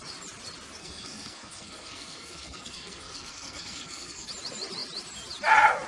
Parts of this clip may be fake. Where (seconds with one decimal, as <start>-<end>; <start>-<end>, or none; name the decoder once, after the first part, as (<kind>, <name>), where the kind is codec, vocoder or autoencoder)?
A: 0.8-4.3 (codec, SNAC)